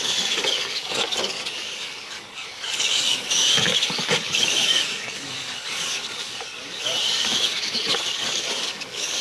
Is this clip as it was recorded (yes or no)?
no